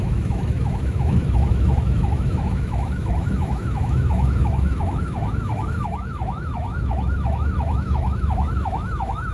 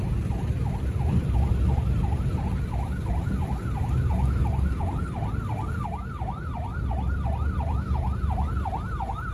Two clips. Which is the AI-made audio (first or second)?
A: first